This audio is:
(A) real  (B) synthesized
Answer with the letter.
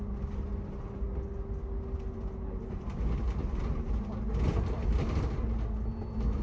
A